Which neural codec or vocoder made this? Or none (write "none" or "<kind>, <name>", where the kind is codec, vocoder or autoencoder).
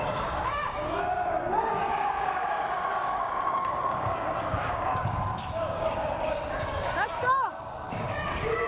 codec, DAC